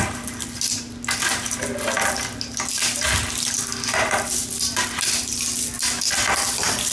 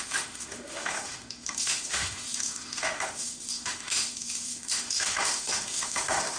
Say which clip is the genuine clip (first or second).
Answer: first